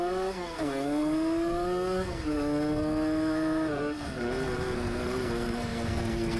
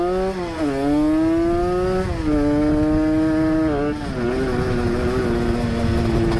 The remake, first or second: first